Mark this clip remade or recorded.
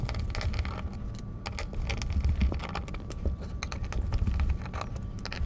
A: recorded